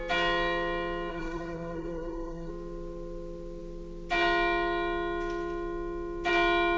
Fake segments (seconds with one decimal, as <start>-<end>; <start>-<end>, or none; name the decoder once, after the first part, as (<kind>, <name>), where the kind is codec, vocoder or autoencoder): 1.1-2.5 (codec, SNAC)